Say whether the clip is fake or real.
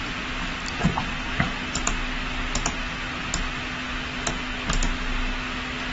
real